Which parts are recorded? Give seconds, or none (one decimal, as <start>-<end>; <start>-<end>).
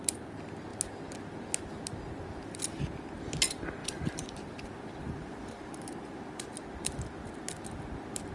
0.0-3.8; 6.5-8.3